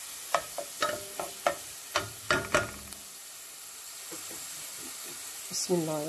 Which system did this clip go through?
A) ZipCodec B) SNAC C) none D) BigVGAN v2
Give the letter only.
C